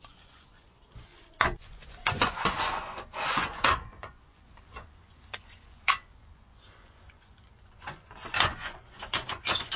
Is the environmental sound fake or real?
fake